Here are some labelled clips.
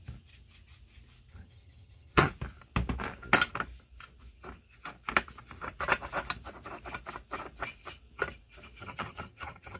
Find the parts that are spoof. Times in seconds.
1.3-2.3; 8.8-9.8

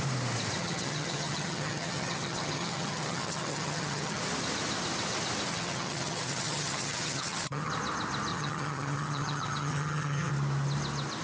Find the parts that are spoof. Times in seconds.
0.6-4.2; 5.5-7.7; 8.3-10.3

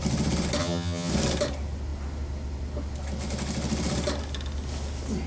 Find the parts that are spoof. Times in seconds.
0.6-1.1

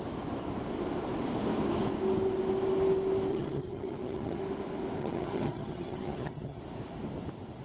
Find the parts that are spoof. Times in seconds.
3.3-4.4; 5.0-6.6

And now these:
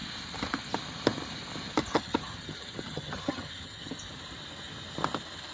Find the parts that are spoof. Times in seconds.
1.9-3.9

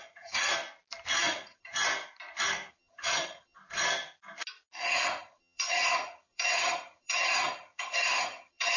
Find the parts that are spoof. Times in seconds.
0.0-0.5; 1.2-1.7; 2.7-3.6; 5.2-8.8

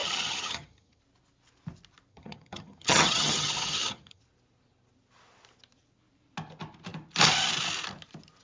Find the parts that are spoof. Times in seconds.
0.0-1.0; 2.1-4.2